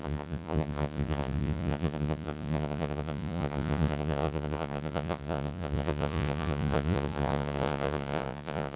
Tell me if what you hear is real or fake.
fake